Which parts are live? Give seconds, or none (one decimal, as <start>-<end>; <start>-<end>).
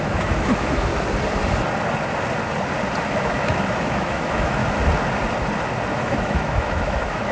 0.9-3.1; 4.6-6.0